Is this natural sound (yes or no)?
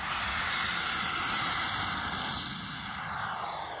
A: yes